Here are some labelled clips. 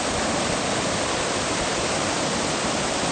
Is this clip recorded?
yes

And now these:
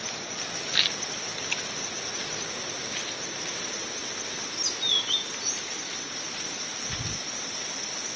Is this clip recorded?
yes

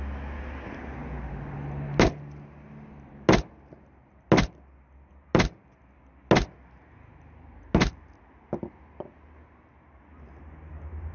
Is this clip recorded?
yes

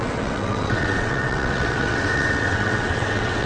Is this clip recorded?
no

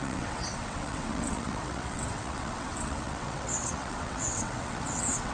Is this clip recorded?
no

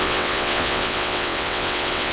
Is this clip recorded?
no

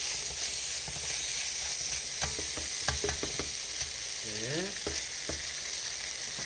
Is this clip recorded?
yes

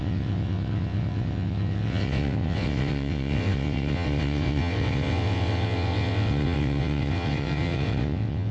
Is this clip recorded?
no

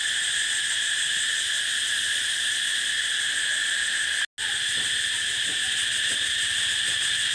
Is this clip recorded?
yes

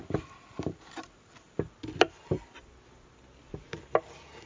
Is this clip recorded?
yes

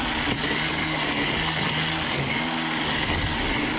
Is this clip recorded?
yes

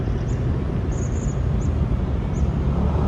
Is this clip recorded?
yes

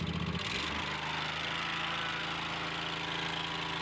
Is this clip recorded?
yes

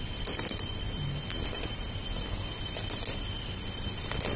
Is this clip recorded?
yes